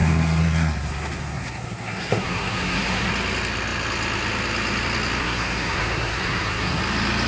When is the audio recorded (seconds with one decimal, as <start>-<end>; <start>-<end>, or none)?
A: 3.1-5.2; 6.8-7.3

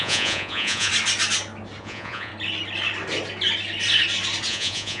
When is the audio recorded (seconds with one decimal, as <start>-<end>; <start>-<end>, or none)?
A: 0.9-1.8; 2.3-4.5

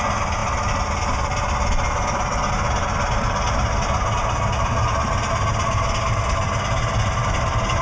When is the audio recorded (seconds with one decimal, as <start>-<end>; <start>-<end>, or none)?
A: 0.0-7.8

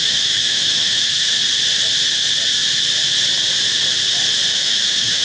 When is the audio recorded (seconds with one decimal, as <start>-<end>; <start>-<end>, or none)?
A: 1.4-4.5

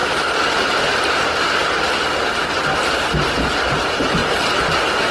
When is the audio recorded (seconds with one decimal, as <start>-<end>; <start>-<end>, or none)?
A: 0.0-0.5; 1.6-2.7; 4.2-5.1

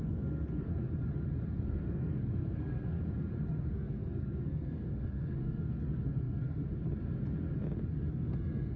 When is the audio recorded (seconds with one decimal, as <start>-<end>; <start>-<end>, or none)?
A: 0.7-1.6; 3.0-3.6; 6.6-8.1